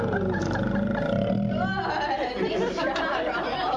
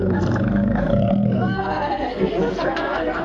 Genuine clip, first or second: first